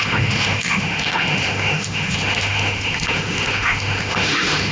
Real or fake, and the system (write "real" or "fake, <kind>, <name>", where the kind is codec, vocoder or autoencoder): fake, autoencoder, DAC-VAE